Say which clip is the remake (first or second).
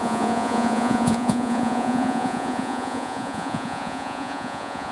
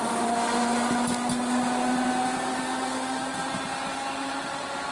first